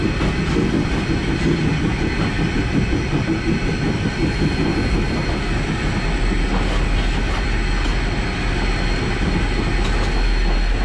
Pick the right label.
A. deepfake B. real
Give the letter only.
B